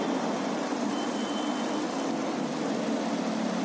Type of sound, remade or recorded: recorded